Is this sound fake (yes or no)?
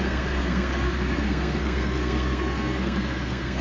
yes